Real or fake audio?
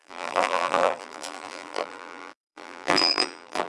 fake